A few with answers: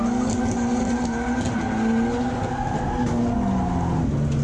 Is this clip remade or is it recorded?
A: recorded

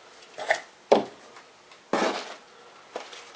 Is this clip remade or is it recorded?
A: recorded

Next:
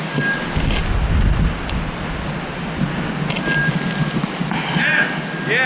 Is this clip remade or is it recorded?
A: recorded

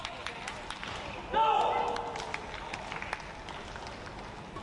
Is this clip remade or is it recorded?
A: recorded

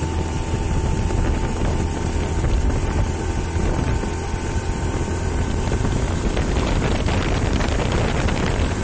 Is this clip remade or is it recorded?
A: recorded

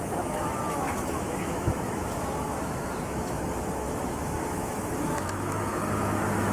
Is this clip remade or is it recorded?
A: remade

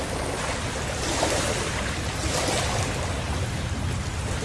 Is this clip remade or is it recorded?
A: recorded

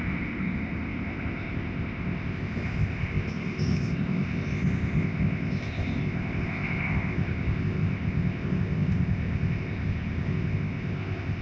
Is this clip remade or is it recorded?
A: remade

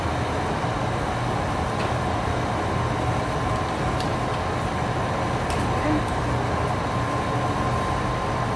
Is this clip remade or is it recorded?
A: recorded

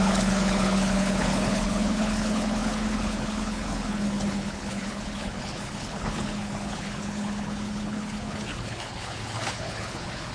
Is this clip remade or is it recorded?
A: remade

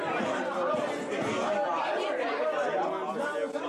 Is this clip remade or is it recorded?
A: recorded